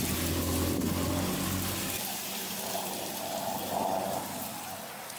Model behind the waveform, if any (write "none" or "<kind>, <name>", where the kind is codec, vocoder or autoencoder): none